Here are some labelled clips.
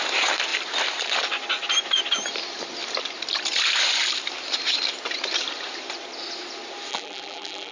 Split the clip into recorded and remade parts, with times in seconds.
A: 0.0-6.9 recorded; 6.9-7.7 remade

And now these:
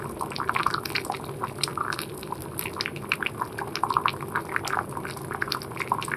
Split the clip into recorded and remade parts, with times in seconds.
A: 0.0-6.2 recorded

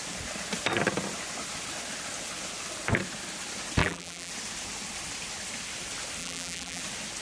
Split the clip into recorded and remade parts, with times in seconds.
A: 0.0-3.8 recorded; 3.8-4.3 remade; 4.3-6.2 recorded; 6.2-6.8 remade; 6.8-7.2 recorded